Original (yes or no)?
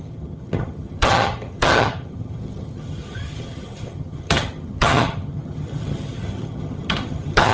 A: no